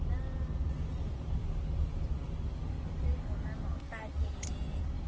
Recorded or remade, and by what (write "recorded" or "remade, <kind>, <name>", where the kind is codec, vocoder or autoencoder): recorded